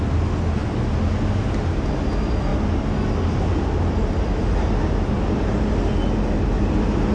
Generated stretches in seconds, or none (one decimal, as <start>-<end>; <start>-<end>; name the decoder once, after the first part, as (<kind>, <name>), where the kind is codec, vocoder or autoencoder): none